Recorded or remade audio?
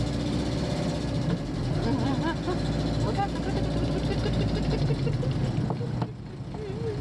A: recorded